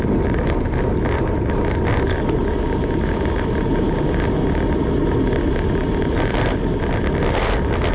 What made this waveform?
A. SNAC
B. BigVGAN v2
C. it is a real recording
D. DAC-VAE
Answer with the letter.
C